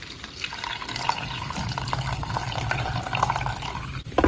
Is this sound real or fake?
real